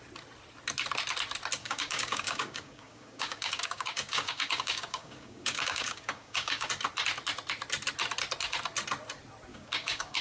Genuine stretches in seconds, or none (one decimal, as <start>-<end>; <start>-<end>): 0.0-1.6; 6.7-9.5